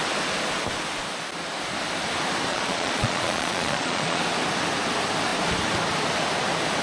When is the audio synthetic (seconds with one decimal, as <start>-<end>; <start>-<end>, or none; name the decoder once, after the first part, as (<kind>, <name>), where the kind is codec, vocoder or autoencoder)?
2.5-4.2 (vocoder, Vocos)